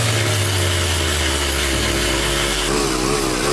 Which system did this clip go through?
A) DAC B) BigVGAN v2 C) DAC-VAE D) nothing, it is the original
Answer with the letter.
D